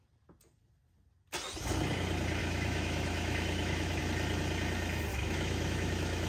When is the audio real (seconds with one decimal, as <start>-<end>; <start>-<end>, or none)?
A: 0.0-2.4; 4.0-5.1